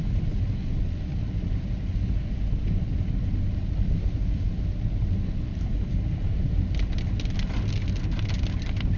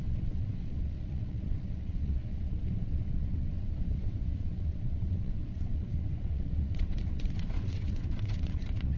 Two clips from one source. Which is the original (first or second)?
first